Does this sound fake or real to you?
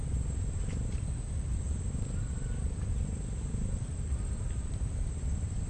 real